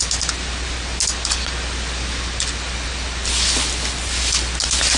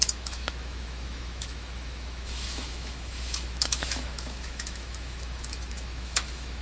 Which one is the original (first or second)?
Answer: first